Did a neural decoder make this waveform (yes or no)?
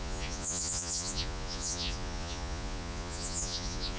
yes